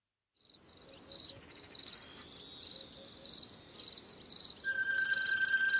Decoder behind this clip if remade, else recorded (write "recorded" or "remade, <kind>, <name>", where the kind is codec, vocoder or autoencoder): recorded